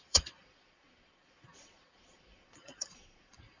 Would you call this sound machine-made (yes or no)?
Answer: yes